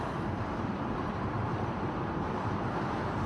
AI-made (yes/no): yes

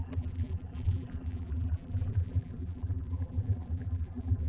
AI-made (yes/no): yes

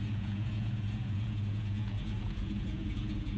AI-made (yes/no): yes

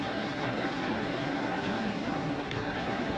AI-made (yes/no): yes